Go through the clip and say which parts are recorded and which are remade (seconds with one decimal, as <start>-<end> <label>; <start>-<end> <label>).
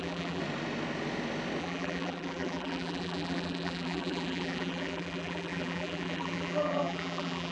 0.0-0.4 remade; 0.4-1.6 recorded; 1.6-7.5 remade